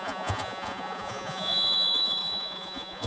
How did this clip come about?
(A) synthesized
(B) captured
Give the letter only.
A